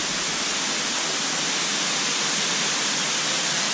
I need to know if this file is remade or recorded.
recorded